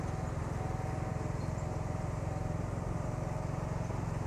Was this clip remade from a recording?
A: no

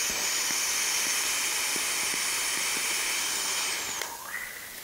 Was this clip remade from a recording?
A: no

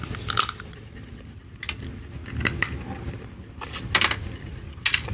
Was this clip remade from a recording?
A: no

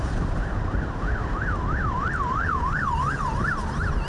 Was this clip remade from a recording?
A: yes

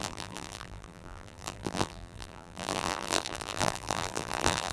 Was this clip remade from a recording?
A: yes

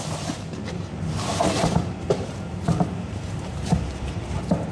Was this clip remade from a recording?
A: yes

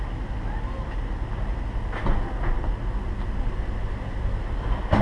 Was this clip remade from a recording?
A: no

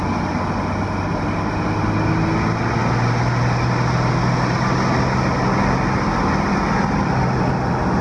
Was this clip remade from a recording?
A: no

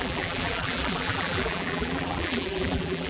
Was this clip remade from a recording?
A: yes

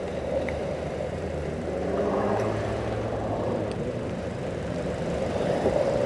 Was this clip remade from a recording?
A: yes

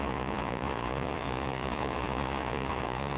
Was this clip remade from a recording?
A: yes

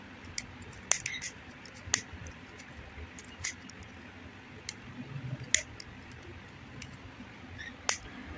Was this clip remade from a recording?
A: no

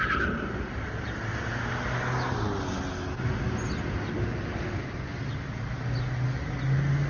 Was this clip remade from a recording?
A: no